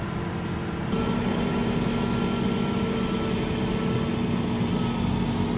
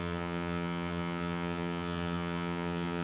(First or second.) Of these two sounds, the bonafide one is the first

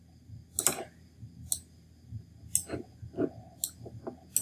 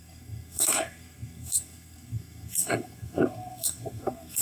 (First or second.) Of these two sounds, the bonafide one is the first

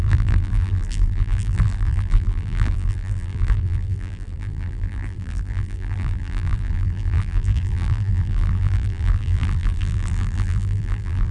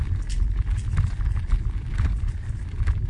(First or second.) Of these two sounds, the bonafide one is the second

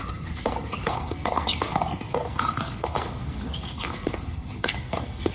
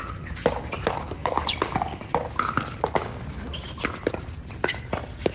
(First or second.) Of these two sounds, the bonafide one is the second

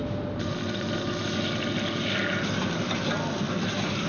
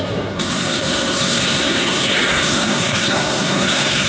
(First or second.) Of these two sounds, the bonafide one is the first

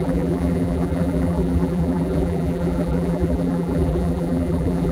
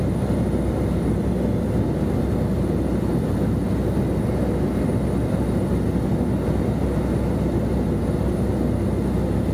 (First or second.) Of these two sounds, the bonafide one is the second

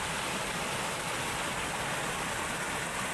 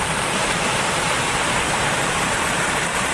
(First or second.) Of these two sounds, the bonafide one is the first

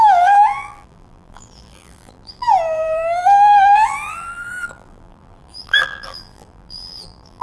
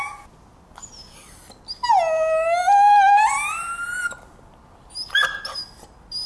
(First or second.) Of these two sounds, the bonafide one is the second